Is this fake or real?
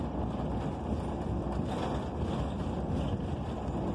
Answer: real